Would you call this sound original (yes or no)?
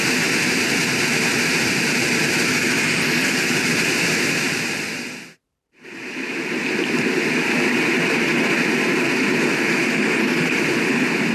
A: no